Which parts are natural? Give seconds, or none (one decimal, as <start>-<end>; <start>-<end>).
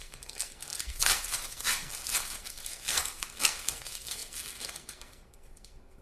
none